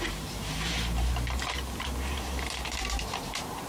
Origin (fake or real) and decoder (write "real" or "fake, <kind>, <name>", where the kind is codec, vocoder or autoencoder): fake, vocoder, BigVGAN v2